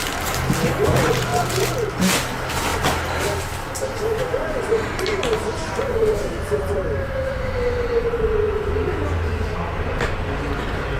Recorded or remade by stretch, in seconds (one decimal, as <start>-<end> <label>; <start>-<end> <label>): 0.0-1.3 recorded; 1.3-1.9 remade; 1.9-2.7 recorded; 2.7-3.5 remade; 3.5-5.1 recorded; 5.1-8.7 remade; 8.7-11.0 recorded